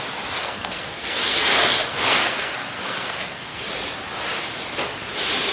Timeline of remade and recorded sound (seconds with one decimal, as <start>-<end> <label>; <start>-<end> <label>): 0.0-0.4 recorded; 0.4-3.7 remade; 3.7-5.5 recorded